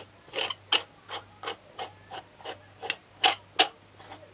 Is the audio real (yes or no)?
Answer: yes